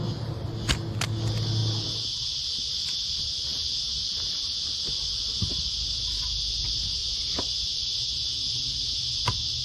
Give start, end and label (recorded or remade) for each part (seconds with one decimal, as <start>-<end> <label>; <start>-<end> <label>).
0.0-9.6 recorded